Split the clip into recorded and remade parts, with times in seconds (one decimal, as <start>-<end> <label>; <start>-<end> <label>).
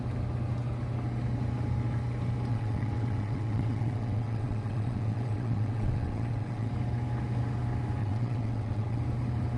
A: 0.0-2.5 recorded; 2.5-6.7 remade; 6.7-8.0 recorded; 8.0-9.0 remade; 9.0-9.6 recorded